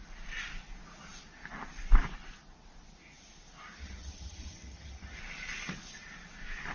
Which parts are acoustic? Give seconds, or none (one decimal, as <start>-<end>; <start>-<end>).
0.0-3.8; 5.2-6.7

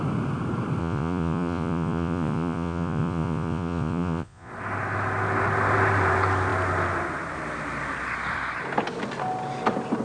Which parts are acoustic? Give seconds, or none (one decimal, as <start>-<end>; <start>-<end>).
0.0-0.8; 4.5-10.0

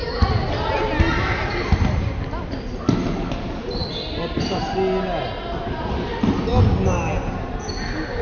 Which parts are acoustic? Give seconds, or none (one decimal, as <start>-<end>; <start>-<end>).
0.0-8.2

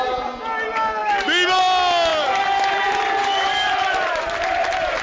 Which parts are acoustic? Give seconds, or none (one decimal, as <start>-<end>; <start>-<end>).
0.0-2.1

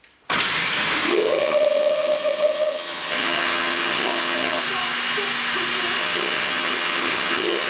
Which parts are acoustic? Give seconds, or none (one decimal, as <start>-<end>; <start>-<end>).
0.0-1.1; 4.6-6.0

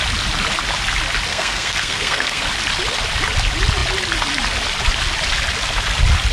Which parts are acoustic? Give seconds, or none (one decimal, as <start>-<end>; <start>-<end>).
0.0-1.3; 2.4-6.3